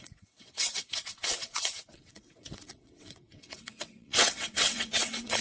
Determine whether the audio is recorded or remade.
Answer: remade